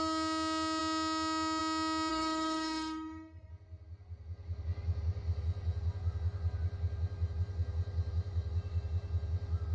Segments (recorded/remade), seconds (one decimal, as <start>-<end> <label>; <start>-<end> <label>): 0.0-2.1 recorded; 2.1-3.5 remade; 3.5-9.7 recorded